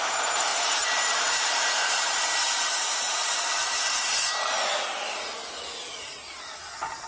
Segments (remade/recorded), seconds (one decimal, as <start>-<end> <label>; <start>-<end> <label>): 0.0-0.5 recorded; 0.5-3.6 remade; 3.6-7.1 recorded